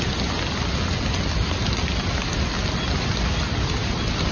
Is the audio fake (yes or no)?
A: no